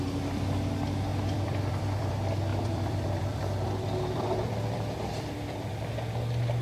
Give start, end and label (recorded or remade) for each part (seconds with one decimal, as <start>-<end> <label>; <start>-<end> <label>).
0.0-1.1 recorded; 1.1-2.1 remade; 2.1-2.5 recorded; 2.5-5.9 remade; 5.9-6.6 recorded